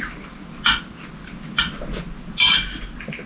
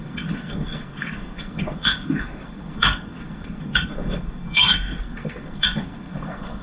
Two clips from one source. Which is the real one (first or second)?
first